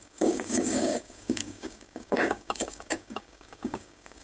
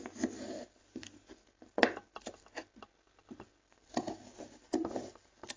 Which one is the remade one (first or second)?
first